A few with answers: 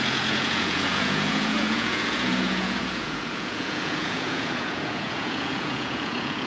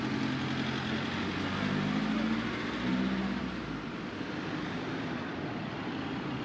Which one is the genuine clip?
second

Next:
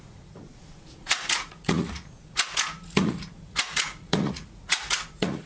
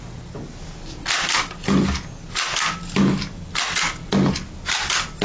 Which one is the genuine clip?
second